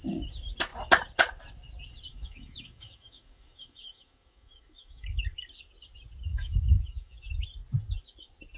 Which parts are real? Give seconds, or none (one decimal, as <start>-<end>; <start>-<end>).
0.0-2.1; 5.2-6.3; 7.3-8.6